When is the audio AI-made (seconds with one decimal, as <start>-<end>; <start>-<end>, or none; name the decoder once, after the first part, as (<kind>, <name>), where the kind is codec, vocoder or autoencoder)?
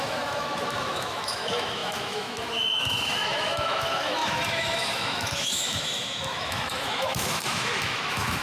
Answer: 0.0-8.4 (autoencoder, DAC-VAE)